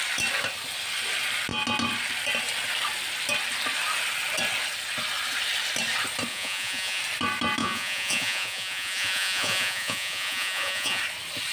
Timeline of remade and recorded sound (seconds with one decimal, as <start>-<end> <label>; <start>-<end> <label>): 0.0-6.3 recorded; 6.3-7.0 remade; 7.0-7.6 recorded; 7.6-11.0 remade; 11.0-11.5 recorded